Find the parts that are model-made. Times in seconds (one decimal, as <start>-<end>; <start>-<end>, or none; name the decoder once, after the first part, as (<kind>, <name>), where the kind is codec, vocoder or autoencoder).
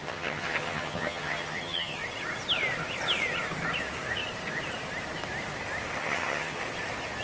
0.0-2.0 (vocoder, HiFi-GAN); 6.0-6.6